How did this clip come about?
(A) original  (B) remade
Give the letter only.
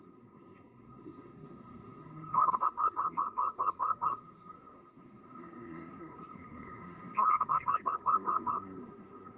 B